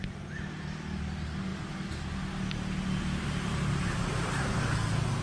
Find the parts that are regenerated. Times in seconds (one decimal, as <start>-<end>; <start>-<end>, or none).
none

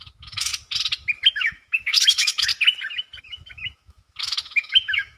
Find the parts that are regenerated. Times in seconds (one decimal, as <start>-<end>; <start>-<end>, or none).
0.0-0.5; 1.3-2.5; 3.2-5.2

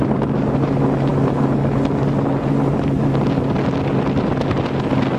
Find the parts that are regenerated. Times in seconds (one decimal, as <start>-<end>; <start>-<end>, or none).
none